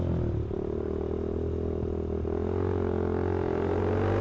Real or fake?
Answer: real